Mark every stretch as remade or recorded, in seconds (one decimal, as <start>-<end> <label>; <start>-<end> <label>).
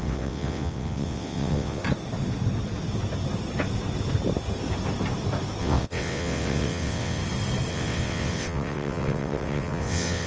0.0-1.8 remade; 1.8-5.6 recorded; 5.6-7.2 remade; 7.2-7.7 recorded; 7.7-10.3 remade